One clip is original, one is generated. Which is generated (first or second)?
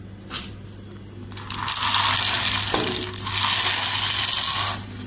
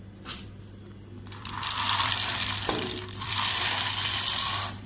second